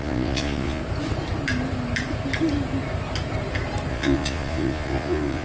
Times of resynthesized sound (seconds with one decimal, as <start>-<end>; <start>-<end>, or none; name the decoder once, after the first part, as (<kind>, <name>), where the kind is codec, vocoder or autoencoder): 0.0-0.8 (vocoder, Vocos); 3.9-5.4